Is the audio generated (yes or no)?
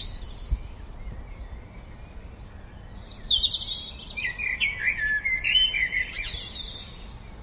no